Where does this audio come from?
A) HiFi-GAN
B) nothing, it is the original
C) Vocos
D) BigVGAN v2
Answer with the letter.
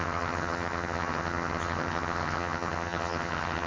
A